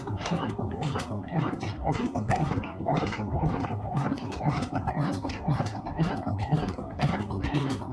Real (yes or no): no